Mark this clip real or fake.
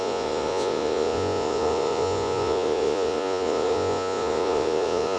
fake